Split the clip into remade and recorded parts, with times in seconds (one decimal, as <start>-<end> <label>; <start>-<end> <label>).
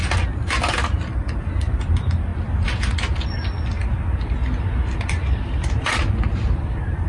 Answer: 0.0-1.4 recorded; 1.4-2.3 remade; 2.3-4.6 recorded; 4.6-6.0 remade; 6.0-6.6 recorded; 6.6-7.1 remade